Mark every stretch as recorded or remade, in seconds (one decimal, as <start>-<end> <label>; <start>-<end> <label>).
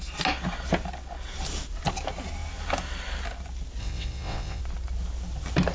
0.0-3.8 recorded; 3.8-4.6 remade; 4.6-5.7 recorded